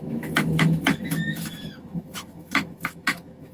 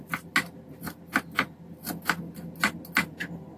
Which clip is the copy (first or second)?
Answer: first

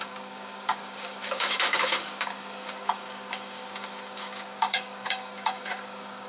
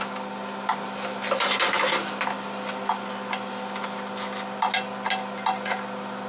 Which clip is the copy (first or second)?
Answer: first